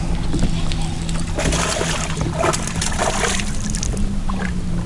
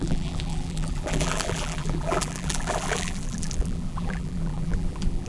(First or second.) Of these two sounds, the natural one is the first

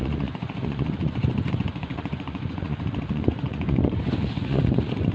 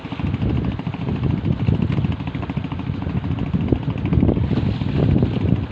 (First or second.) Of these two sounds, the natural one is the second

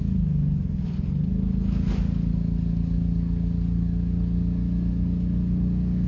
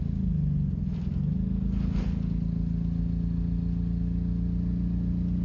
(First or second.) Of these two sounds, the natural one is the second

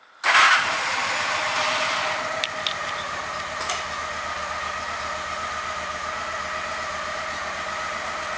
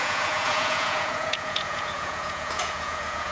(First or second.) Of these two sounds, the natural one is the first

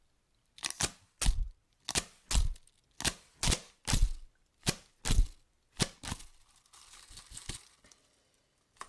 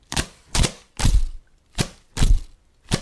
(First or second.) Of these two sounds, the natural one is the first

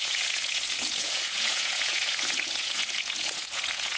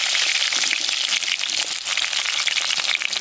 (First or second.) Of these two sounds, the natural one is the second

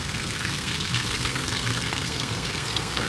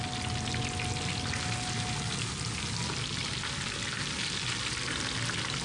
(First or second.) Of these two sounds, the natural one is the second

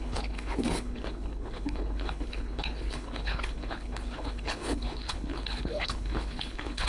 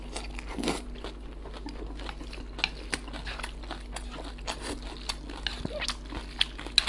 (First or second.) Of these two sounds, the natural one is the second